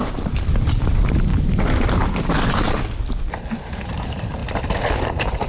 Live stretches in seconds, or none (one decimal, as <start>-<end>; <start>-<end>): 1.3-3.7; 4.4-5.0